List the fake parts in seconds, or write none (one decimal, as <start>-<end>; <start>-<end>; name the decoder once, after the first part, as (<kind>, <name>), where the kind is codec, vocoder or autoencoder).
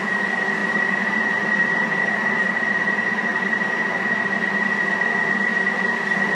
0.6-2.5 (vocoder, BigVGAN v2); 3.3-3.8; 5.5-6.3